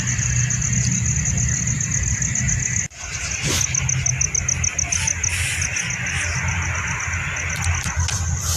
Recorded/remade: recorded